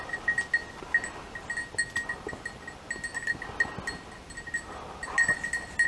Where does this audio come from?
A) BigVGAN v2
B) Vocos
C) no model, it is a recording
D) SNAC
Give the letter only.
C